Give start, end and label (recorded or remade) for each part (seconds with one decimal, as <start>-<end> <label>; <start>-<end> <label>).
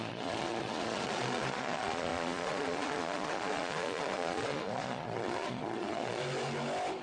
0.0-6.2 remade; 6.2-7.0 recorded